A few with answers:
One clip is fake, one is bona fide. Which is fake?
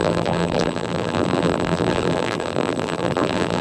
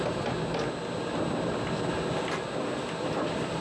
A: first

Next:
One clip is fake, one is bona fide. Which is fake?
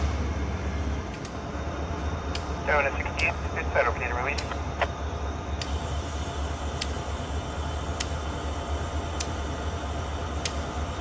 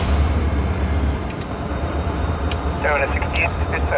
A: second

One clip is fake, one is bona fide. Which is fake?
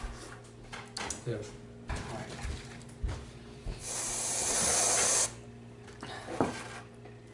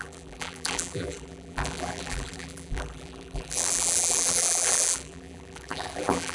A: second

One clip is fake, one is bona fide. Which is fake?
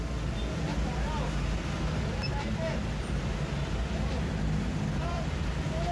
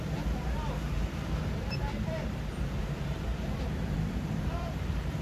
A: second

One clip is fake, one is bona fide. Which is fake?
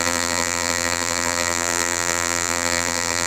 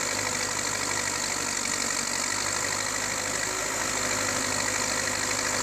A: first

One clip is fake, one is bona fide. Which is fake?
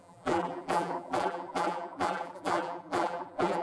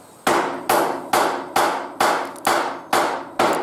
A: first